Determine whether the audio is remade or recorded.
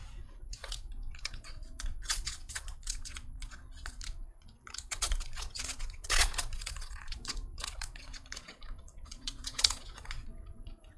remade